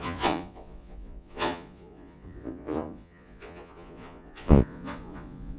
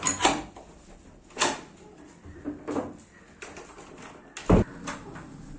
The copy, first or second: first